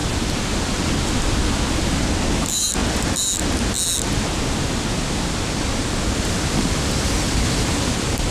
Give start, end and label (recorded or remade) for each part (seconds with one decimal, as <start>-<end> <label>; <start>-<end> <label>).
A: 0.0-8.3 recorded